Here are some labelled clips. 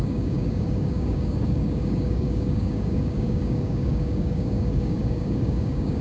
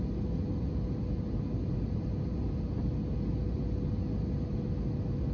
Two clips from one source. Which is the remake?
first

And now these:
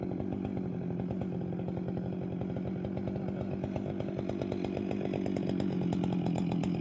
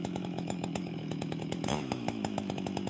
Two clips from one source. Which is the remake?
second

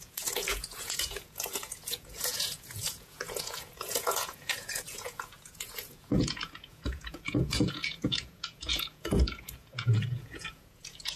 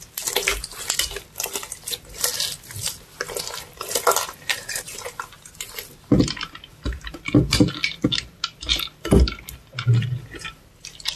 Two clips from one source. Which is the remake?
first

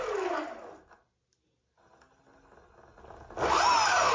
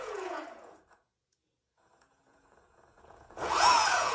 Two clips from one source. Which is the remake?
second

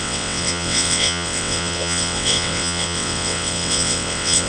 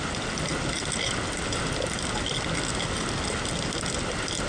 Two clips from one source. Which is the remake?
first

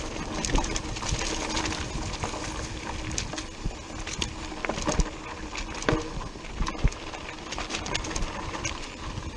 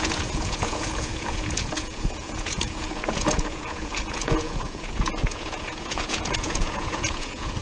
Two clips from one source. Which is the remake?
second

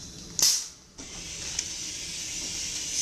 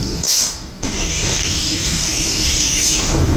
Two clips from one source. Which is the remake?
second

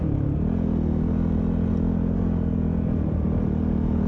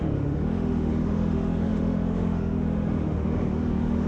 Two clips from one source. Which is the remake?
second